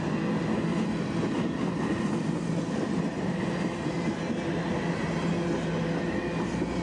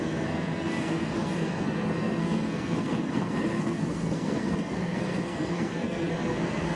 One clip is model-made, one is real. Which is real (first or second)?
first